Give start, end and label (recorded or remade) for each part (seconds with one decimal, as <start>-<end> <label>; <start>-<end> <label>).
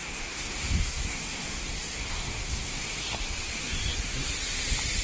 0.0-3.0 remade; 3.0-5.0 recorded